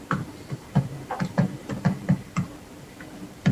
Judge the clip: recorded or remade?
remade